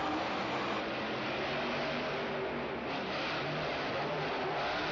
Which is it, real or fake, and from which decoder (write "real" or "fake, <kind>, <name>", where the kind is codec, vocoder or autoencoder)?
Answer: real